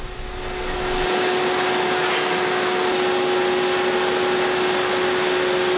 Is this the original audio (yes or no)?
yes